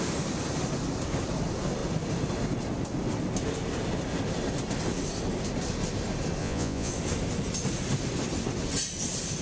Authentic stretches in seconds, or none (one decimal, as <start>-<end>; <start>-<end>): 0.0-6.4; 6.9-9.4